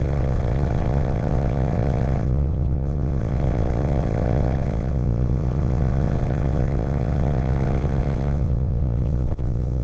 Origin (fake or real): fake